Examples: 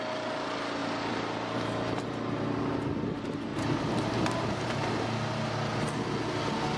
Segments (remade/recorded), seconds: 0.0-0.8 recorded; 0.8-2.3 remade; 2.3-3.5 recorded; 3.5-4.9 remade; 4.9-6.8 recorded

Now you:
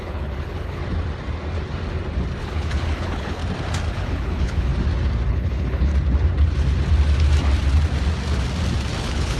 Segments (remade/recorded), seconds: 0.0-0.8 remade; 0.8-2.4 recorded; 2.4-3.4 remade; 3.4-3.9 recorded; 3.9-4.7 remade; 4.7-5.3 recorded; 5.3-5.9 remade; 5.9-9.0 recorded; 9.0-9.4 remade

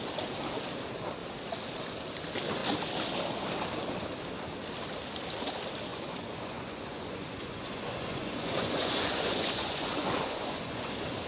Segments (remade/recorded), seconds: 0.0-5.9 recorded; 5.9-10.9 remade; 10.9-11.3 recorded

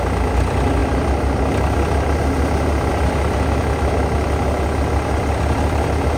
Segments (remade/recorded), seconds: 0.0-6.2 recorded

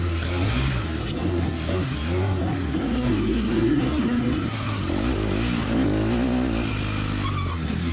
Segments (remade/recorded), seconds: 0.0-4.8 remade; 4.8-7.5 recorded; 7.5-7.9 remade

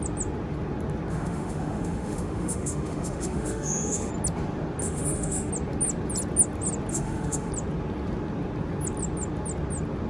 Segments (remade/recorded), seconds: 0.0-1.1 recorded; 1.1-4.1 remade; 4.1-4.8 recorded; 4.8-5.5 remade; 5.5-6.9 recorded; 6.9-7.5 remade; 7.5-10.1 recorded

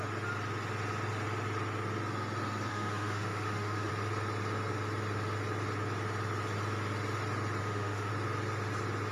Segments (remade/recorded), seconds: 0.0-2.7 recorded; 2.7-3.9 remade; 3.9-7.6 recorded; 7.6-8.1 remade; 8.1-9.1 recorded

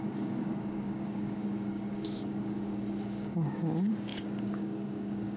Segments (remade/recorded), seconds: 0.0-5.4 remade